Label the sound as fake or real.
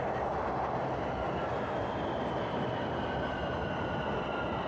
real